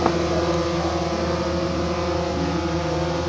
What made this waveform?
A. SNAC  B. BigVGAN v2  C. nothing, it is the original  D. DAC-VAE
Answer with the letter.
C